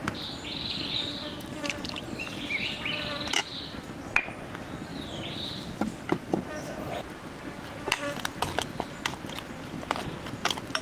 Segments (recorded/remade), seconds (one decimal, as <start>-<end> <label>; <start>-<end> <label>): 0.0-10.8 recorded